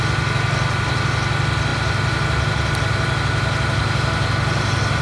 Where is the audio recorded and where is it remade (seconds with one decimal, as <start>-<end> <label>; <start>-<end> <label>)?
0.0-5.0 recorded